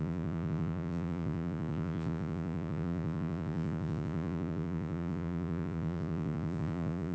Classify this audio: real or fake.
fake